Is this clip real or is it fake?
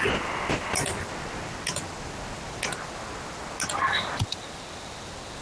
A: real